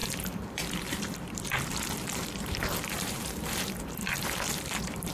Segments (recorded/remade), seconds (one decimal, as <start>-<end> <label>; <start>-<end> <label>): 0.0-5.1 remade